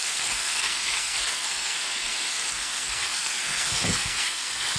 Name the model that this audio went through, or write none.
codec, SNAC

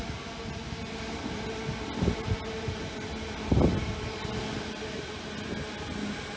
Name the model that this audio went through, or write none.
none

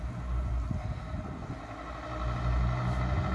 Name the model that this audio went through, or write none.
none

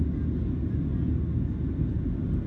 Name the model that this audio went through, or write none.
none